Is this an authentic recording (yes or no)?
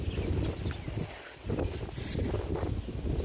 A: yes